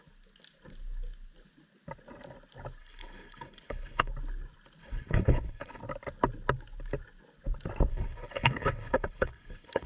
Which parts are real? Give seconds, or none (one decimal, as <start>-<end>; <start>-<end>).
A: 0.0-2.8; 4.1-4.8; 5.8-7.9